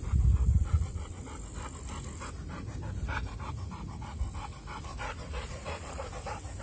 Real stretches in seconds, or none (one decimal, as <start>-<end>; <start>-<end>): 0.0-0.5; 1.2-4.9; 6.1-6.6